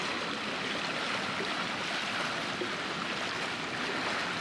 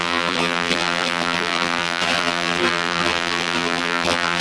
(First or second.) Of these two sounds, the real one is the first